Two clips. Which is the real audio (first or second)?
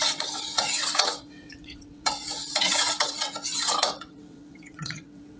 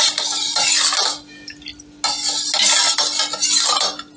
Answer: second